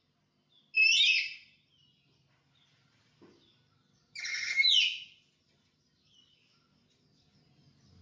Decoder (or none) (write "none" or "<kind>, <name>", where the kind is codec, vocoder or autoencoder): none